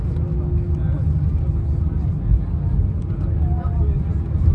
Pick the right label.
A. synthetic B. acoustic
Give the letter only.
B